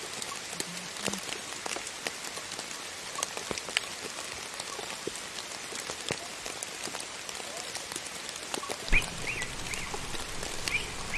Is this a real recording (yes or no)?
yes